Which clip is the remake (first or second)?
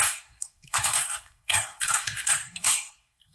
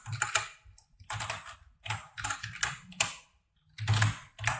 first